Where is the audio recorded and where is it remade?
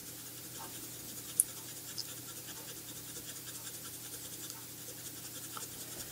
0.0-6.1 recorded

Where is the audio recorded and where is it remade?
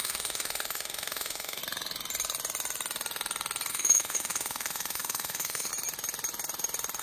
0.0-1.6 remade; 1.6-3.7 recorded; 3.7-5.7 remade; 5.7-7.0 recorded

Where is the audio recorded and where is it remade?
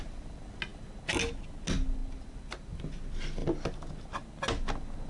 0.0-5.1 recorded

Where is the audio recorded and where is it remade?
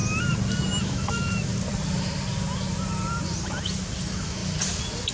0.0-0.8 recorded; 0.8-1.5 remade; 1.5-4.0 recorded; 4.0-4.4 remade; 4.4-5.1 recorded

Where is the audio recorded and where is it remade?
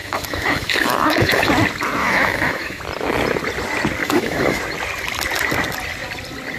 0.0-1.5 remade; 1.5-2.0 recorded; 2.0-2.8 remade; 2.8-4.0 recorded; 4.0-4.6 remade; 4.6-6.6 recorded